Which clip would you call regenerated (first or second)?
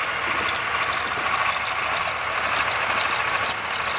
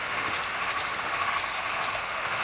second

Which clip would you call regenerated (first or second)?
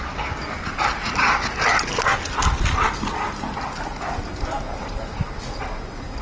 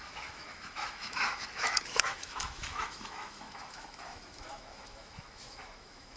second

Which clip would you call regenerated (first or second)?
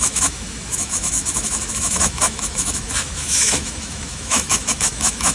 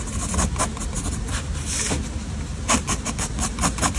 first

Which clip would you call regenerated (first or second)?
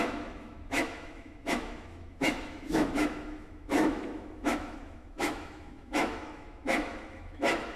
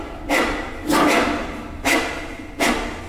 first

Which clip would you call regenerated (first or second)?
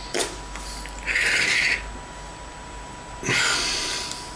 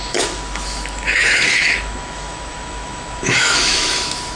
second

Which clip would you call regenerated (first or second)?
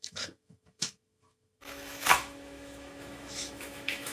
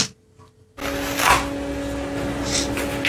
first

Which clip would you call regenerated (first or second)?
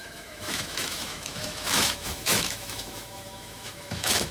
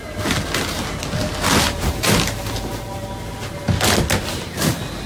first